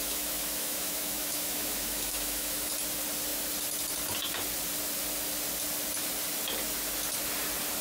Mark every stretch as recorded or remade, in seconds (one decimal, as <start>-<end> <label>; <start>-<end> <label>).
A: 0.0-2.7 remade; 2.7-7.8 recorded